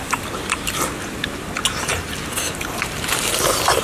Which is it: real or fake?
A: real